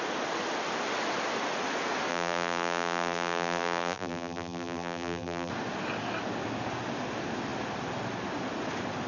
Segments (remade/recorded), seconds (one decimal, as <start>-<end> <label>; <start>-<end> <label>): 0.0-2.1 recorded; 2.1-5.5 remade; 5.5-9.1 recorded